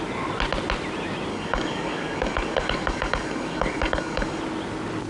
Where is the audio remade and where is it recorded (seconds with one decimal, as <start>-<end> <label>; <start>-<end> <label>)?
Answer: 0.0-1.3 recorded; 1.3-4.4 remade; 4.4-5.1 recorded